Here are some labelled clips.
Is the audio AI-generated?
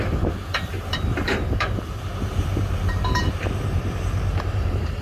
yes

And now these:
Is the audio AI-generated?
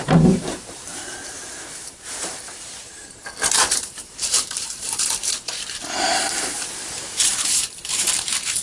yes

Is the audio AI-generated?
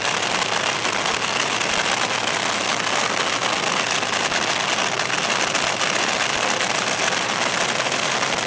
no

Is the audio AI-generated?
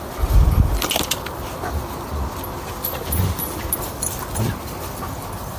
no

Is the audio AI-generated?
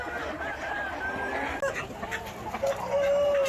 no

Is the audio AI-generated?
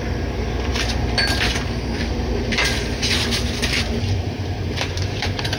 yes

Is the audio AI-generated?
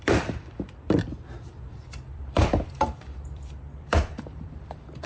yes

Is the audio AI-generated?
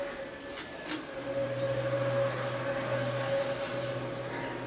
no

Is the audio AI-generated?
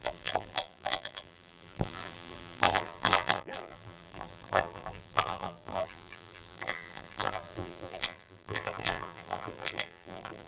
yes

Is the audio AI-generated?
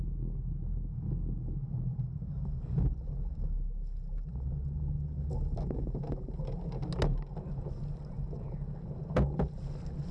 no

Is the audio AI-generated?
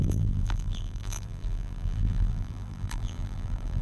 yes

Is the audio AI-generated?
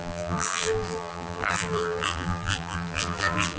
yes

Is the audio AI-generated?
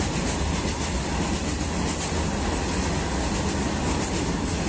no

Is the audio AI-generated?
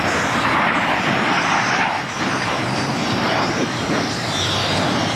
yes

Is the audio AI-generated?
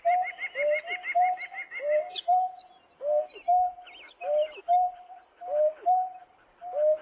no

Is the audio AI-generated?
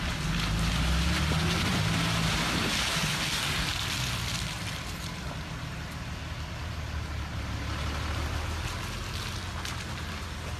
no